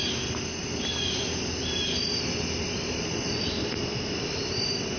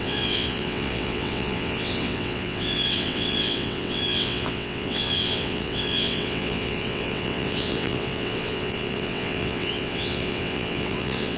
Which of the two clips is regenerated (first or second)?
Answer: second